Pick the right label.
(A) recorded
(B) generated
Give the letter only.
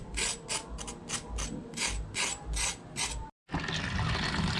A